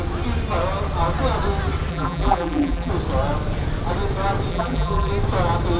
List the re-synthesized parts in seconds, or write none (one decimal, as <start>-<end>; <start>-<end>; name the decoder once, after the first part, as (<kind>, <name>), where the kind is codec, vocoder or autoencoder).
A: 1.9-2.9 (vocoder, BigVGAN v2); 4.5-5.1